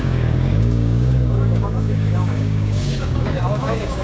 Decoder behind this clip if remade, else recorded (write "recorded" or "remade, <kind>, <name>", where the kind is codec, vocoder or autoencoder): remade, codec, DAC